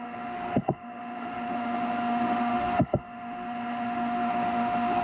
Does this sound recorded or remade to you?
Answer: remade